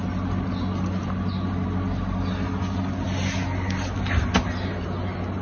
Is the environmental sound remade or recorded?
recorded